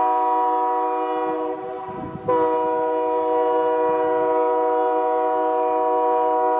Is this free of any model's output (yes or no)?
yes